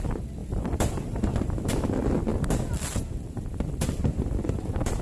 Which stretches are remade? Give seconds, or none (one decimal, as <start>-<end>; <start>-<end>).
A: 0.4-1.9; 2.3-5.0